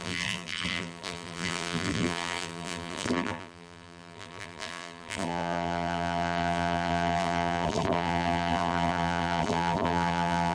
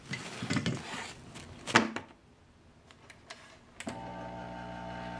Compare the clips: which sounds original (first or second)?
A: second